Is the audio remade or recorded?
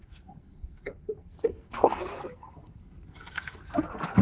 remade